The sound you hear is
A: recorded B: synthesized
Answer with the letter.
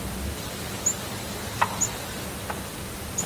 A